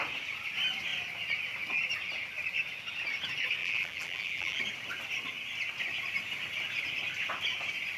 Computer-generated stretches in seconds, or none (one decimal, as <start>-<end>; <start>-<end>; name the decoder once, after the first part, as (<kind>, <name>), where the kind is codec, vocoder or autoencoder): 3.6-4.6 (vocoder, BigVGAN v2)